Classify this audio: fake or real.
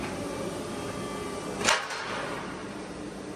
real